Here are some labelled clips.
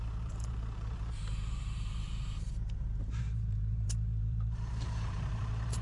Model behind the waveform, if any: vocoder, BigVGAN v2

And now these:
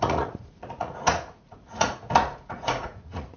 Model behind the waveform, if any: vocoder, Vocos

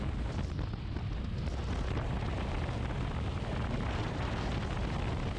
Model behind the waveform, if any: none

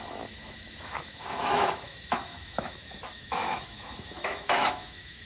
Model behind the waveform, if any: autoencoder, DAC-VAE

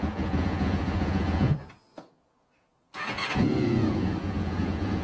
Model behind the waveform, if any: vocoder, Vocos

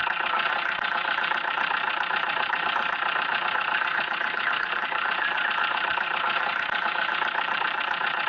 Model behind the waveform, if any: vocoder, BigVGAN v2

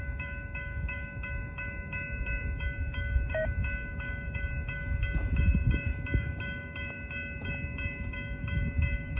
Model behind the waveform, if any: autoencoder, DAC-VAE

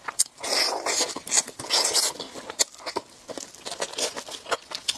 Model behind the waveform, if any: none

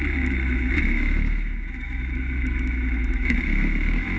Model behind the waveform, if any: autoencoder, DAC-VAE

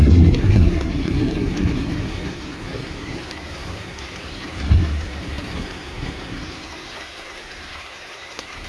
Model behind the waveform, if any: codec, SNAC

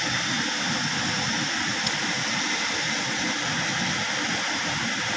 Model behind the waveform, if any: none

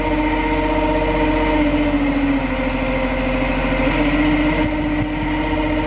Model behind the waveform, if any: none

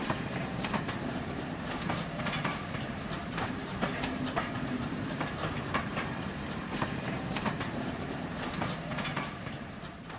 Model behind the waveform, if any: vocoder, BigVGAN v2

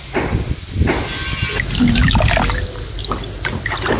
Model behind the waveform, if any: none